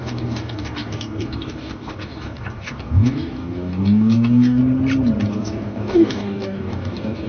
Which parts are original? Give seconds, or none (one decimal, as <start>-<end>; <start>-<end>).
4.6-5.3